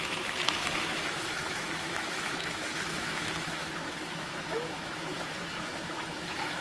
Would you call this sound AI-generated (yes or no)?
yes